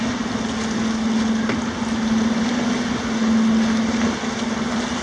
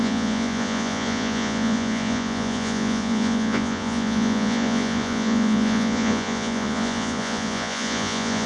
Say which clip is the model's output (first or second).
second